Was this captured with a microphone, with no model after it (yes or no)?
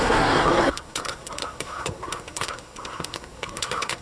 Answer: no